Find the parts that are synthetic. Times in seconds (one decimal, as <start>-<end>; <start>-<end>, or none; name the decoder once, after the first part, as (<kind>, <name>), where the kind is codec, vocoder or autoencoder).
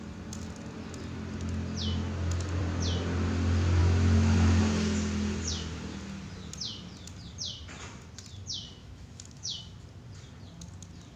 3.8-4.6 (autoencoder, DAC-VAE); 8.8-9.6